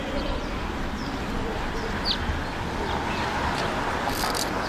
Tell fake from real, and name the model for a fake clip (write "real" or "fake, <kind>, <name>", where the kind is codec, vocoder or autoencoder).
real